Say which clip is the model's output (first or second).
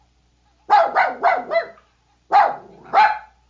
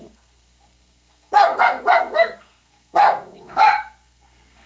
second